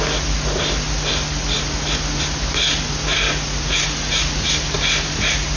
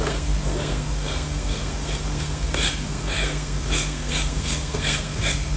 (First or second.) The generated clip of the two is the second